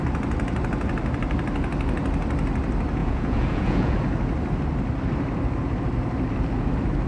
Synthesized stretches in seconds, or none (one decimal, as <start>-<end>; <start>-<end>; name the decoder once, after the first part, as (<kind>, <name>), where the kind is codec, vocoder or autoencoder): 3.0-3.9 (vocoder, Vocos)